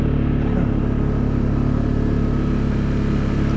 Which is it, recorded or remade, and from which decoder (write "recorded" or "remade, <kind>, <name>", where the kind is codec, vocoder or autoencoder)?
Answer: recorded